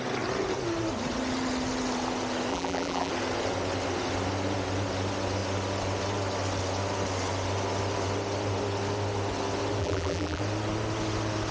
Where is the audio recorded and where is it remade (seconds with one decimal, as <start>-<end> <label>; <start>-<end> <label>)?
0.0-2.5 recorded; 2.5-3.1 remade; 3.1-9.8 recorded; 9.8-10.4 remade; 10.4-11.5 recorded